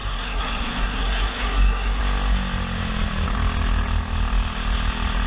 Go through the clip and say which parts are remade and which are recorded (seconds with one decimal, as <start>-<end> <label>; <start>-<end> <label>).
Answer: 0.0-2.0 remade; 2.0-5.3 recorded